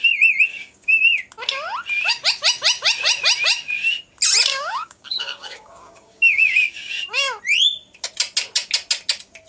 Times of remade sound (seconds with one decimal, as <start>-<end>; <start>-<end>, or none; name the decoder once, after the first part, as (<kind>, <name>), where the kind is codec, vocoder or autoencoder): 0.5-1.0 (codec, DAC); 4.5-6.9